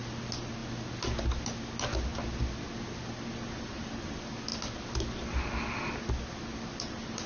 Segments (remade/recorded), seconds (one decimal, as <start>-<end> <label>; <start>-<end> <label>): 0.0-7.3 recorded